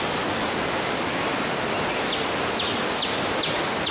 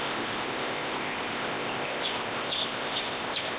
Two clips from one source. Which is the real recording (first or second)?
first